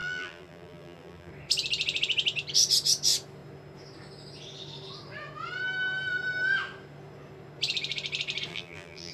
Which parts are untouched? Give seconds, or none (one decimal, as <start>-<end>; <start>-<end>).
1.3-8.5